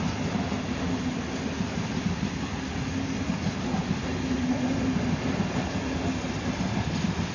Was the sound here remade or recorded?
recorded